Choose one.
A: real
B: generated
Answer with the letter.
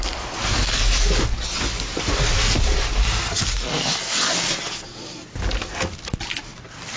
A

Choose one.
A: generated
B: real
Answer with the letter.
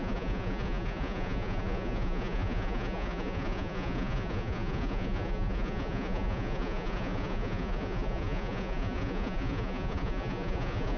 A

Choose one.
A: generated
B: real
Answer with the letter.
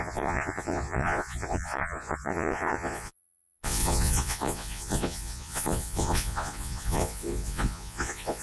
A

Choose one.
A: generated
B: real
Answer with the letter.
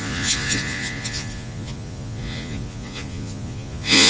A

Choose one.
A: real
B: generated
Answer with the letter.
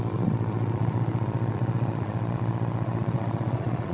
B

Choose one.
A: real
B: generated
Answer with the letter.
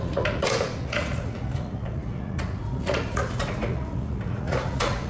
B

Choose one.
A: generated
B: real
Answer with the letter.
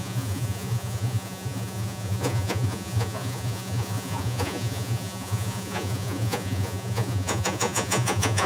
A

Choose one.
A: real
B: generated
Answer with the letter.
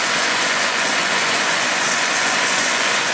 B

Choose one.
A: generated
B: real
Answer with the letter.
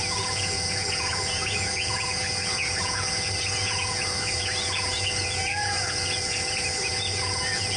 A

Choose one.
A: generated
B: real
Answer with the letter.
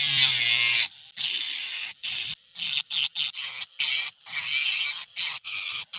B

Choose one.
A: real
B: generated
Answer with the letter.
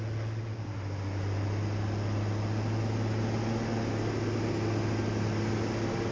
A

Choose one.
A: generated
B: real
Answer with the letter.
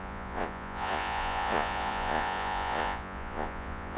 A